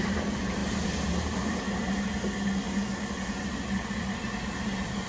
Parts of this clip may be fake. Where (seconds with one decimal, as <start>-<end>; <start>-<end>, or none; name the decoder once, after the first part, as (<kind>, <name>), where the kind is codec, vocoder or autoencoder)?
0.0-0.6 (vocoder, BigVGAN v2); 3.7-5.1

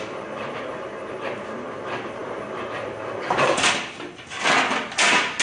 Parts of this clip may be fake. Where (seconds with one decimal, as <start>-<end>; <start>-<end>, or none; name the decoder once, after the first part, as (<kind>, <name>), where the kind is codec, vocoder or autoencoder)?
none

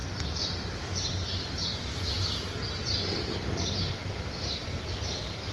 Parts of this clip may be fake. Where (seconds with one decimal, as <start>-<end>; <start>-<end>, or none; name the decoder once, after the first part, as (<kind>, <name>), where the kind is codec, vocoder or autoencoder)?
none

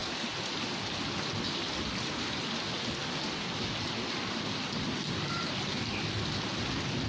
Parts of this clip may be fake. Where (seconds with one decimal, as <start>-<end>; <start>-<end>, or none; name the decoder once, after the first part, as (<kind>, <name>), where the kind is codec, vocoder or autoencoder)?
none

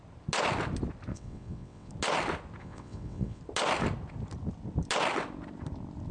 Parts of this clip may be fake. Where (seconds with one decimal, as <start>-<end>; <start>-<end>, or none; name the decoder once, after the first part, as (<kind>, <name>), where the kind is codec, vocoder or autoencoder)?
1.1-1.9 (vocoder, WaveNeXt); 2.6-3.4

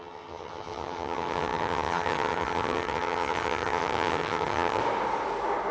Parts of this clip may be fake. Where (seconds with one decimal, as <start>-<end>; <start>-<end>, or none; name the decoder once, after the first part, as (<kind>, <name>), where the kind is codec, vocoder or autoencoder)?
0.0-4.8 (vocoder, HiFi-GAN)